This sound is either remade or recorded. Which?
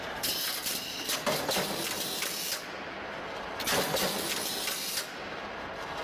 recorded